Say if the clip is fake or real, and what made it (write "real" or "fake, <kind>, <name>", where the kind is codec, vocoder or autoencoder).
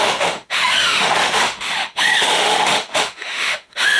fake, autoencoder, DAC-VAE